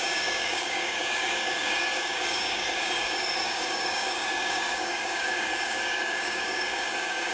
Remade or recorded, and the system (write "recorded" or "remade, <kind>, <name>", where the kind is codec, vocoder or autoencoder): remade, codec, DAC